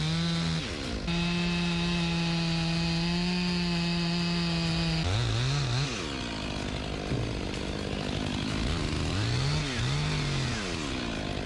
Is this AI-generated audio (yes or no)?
no